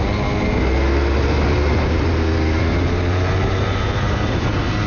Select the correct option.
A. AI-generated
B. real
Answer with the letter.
B